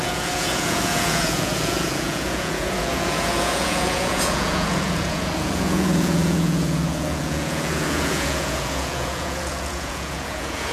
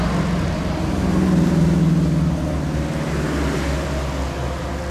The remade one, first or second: first